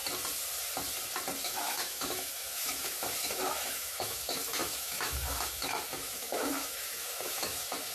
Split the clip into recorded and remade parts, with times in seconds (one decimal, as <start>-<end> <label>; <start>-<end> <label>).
0.0-1.4 recorded; 1.4-7.9 remade